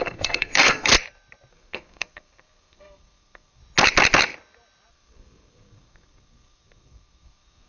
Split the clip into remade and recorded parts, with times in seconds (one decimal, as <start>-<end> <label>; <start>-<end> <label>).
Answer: 0.0-0.9 remade; 0.9-1.5 recorded; 1.5-3.6 remade; 3.6-4.9 recorded; 4.9-7.7 remade